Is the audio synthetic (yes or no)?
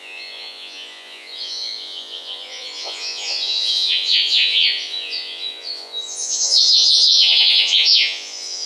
yes